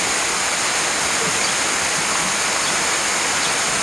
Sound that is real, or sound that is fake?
real